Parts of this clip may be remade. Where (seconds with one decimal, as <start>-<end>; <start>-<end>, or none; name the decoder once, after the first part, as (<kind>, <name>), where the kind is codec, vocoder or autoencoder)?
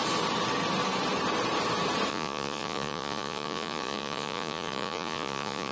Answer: 2.1-5.7 (vocoder, Vocos)